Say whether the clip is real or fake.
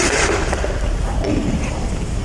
real